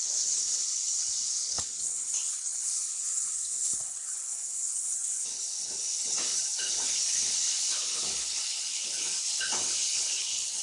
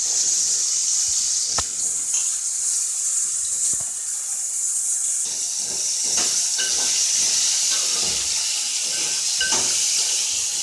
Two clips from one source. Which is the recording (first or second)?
second